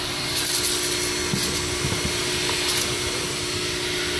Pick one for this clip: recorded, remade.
recorded